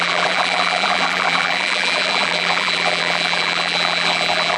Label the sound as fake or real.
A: fake